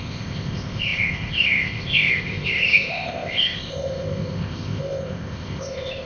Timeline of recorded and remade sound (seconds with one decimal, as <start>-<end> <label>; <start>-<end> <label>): 0.0-6.1 remade